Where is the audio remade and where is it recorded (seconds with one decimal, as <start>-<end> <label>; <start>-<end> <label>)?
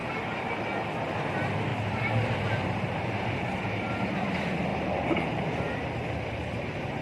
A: 0.0-1.7 recorded; 1.7-3.9 remade; 3.9-4.7 recorded; 4.7-5.4 remade; 5.4-7.0 recorded